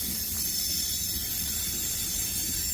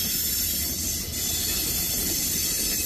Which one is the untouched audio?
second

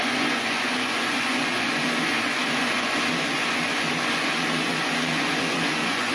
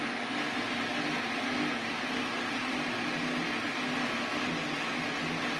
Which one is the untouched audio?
second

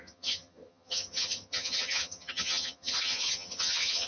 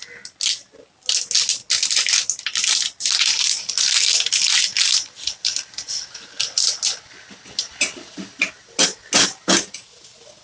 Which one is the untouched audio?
second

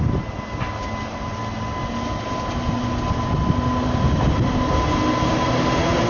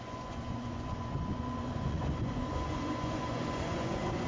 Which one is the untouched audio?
first